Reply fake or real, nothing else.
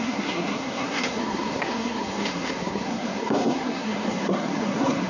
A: fake